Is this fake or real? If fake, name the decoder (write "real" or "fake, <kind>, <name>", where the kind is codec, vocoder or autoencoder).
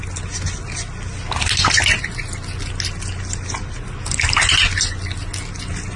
real